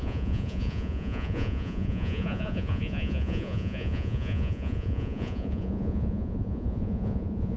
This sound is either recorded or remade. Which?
remade